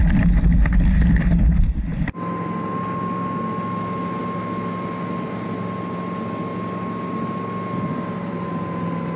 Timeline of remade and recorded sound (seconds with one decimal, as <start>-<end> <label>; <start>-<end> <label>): 0.0-9.2 recorded